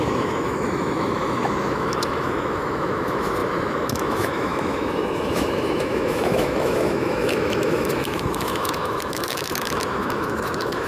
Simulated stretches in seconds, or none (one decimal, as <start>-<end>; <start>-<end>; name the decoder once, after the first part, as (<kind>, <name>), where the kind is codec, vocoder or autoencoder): 0.0-10.9 (autoencoder, DAC-VAE)